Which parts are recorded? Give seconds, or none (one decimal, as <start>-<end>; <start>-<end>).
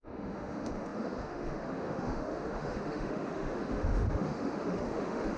none